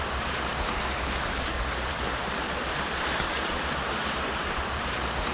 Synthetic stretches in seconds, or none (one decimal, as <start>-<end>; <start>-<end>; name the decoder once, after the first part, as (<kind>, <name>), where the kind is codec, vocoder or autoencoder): 0.0-5.3 (vocoder, BigVGAN v2)